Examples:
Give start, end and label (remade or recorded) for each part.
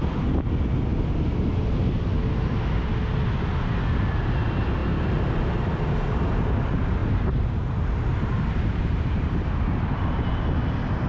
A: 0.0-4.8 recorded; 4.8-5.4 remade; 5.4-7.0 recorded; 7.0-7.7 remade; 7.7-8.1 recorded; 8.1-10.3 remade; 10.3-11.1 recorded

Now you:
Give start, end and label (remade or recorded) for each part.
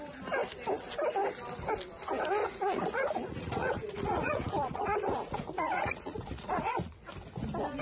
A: 0.0-2.4 recorded; 2.4-7.1 remade; 7.1-7.8 recorded